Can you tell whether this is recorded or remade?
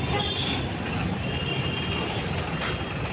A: recorded